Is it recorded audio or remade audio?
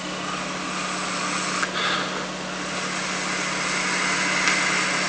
recorded